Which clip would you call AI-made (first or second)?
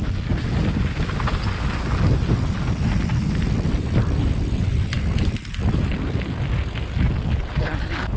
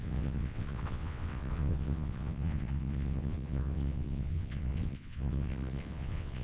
second